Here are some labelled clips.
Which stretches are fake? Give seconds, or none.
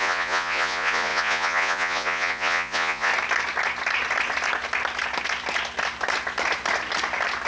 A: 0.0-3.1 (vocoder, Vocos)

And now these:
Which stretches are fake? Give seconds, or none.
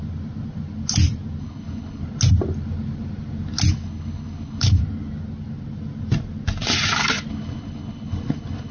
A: 1.4-2.0 (codec, HILCodec); 3.7-4.8; 7.3-8.7